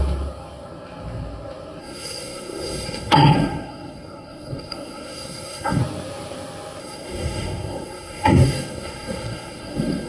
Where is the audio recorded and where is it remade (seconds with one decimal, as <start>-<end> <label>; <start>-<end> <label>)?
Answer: 0.0-1.8 recorded; 1.8-5.8 remade; 5.8-6.8 recorded; 6.8-10.1 remade